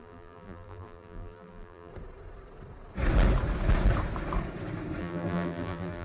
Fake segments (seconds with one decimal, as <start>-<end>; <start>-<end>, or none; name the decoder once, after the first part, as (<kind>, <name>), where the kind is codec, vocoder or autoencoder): 0.0-1.9 (vocoder, BigVGAN v2); 5.0-6.0